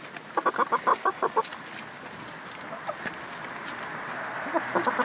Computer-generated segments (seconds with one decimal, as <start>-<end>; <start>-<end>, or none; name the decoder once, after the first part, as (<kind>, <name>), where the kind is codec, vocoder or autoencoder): 0.9-1.5 (codec, DAC)